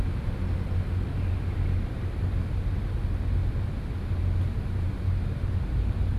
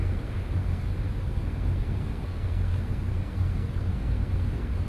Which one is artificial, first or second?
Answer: second